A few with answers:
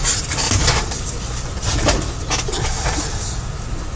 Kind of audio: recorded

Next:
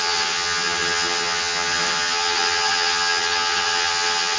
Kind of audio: remade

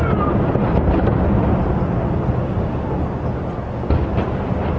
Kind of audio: recorded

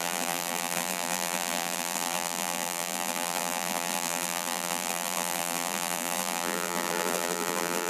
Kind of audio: remade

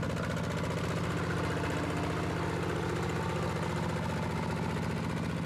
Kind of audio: recorded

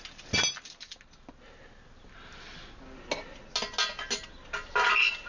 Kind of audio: recorded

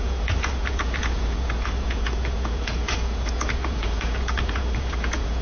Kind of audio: remade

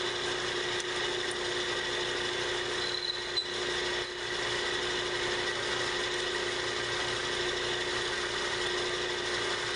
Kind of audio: recorded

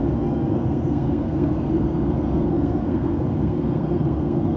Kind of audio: remade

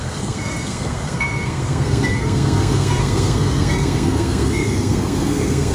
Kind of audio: remade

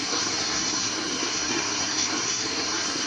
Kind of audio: remade